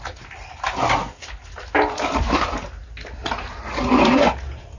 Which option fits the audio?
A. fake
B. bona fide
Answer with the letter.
B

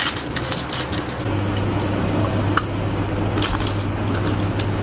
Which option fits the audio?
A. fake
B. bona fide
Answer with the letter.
B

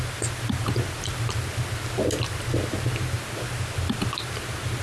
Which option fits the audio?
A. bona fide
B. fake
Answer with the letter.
A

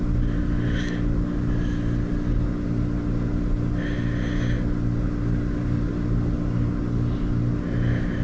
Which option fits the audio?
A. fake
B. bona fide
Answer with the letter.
B